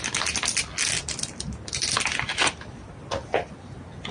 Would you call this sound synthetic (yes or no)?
no